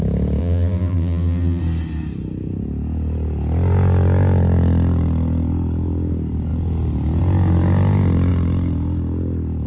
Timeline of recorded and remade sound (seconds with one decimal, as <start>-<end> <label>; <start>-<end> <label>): 0.0-0.4 recorded; 0.4-1.6 remade; 1.6-9.7 recorded